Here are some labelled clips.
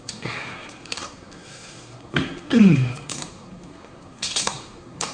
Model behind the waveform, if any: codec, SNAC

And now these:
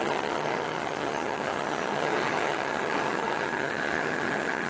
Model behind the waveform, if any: vocoder, HiFi-GAN